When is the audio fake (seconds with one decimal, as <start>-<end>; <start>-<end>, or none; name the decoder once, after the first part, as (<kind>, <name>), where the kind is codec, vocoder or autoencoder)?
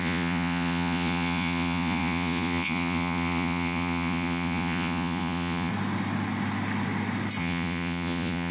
0.0-5.7 (vocoder, Vocos); 7.4-8.5